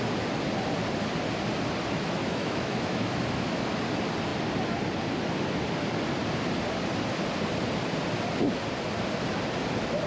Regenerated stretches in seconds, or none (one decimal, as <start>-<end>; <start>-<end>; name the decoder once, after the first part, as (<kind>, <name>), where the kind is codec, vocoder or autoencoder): 2.2-3.6 (autoencoder, DAC-VAE)